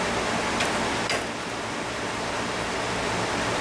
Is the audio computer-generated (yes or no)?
no